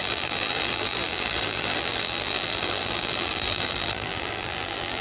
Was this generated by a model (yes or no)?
yes